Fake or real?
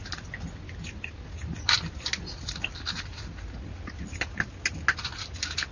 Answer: real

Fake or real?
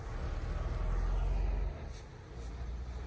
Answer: real